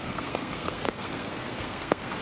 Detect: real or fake fake